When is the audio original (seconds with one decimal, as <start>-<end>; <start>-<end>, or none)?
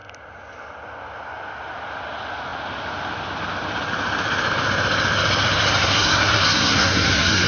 0.0-5.8